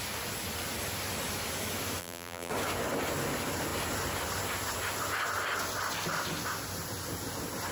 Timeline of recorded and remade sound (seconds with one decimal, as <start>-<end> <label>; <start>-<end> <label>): 0.0-2.0 recorded; 2.0-2.5 remade; 2.5-7.7 recorded